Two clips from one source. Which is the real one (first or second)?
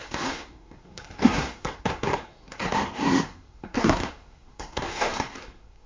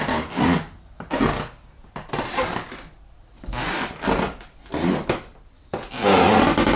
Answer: second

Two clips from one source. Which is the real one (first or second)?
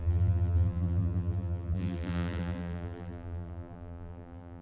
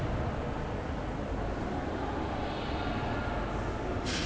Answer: second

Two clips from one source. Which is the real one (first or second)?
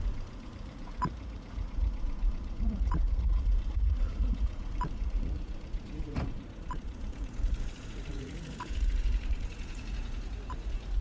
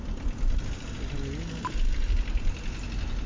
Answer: second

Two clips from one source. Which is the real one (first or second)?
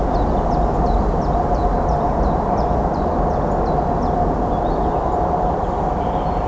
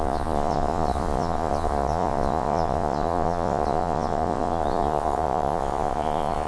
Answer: first